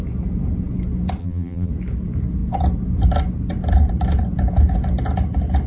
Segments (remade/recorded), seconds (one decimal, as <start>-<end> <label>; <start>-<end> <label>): 0.0-1.2 recorded; 1.2-1.7 remade; 1.7-5.7 recorded